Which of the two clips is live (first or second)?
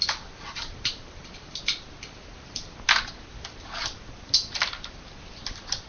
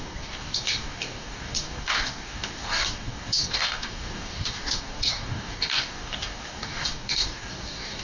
first